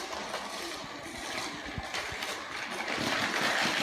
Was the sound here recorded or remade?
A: remade